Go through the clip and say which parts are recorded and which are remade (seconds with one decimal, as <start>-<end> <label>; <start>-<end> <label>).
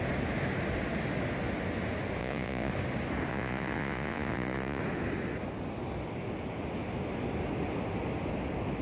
0.0-2.2 recorded; 2.2-2.7 remade; 2.7-3.3 recorded; 3.3-4.8 remade; 4.8-8.8 recorded